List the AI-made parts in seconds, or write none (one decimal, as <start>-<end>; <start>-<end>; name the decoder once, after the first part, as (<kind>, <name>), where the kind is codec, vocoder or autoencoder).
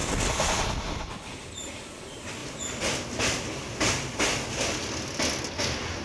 none